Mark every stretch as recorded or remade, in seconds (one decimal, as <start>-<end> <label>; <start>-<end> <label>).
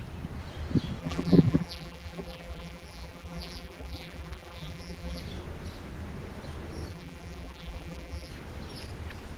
0.0-1.0 recorded; 1.0-5.2 remade; 5.2-6.9 recorded; 6.9-8.3 remade; 8.3-9.4 recorded